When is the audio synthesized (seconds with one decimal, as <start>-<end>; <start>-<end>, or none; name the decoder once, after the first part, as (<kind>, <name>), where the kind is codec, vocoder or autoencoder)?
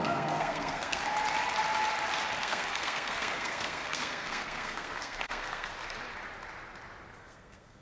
0.0-1.0 (codec, SNAC); 2.4-5.7; 7.2-7.8